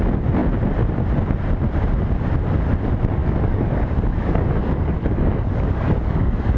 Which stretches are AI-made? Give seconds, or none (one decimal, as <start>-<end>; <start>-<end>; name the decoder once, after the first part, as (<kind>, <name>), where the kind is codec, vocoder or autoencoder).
3.2-6.6 (codec, DAC)